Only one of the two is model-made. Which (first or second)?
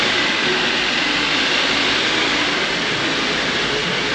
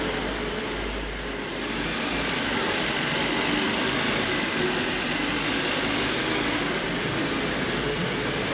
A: first